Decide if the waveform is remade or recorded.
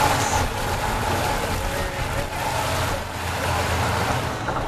recorded